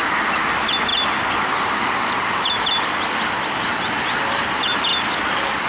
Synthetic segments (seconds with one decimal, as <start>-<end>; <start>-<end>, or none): none